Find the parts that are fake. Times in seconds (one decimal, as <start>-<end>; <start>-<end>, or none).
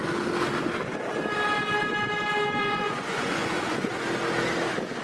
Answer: 2.6-3.9